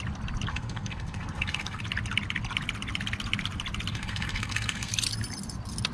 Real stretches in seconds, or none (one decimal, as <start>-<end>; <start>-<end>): 0.0-0.5; 1.8-3.9; 4.9-5.9